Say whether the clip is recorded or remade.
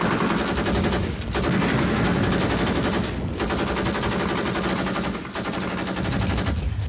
recorded